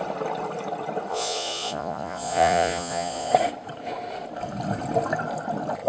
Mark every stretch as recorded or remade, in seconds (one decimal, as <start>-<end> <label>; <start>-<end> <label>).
0.0-1.1 recorded; 1.1-3.3 remade; 3.3-5.9 recorded